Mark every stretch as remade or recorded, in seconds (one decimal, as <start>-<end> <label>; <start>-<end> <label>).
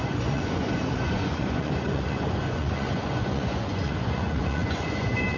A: 0.0-5.4 remade